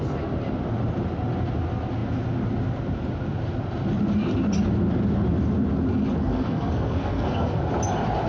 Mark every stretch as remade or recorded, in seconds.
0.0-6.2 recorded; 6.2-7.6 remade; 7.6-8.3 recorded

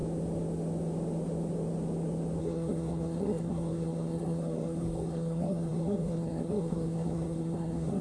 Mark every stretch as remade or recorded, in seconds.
0.0-2.4 recorded; 2.4-8.0 remade

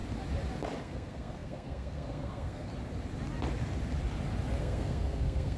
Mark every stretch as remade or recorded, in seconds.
0.0-0.8 recorded; 0.8-2.7 remade; 2.7-4.6 recorded; 4.6-5.6 remade

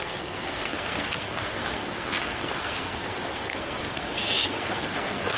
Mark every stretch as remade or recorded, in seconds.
0.0-5.4 remade

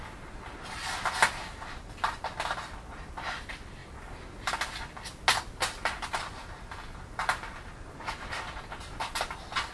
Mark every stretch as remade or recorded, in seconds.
0.0-9.7 recorded

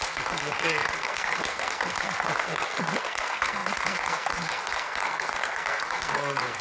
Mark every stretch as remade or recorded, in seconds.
0.0-6.6 remade

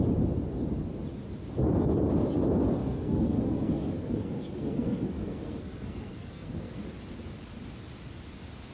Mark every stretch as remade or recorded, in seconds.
0.0-2.8 recorded; 2.8-6.8 remade; 6.8-8.7 recorded

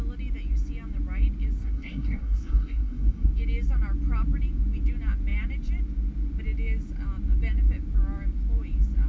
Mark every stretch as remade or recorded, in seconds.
0.0-1.6 recorded; 1.6-3.3 remade; 3.3-9.1 recorded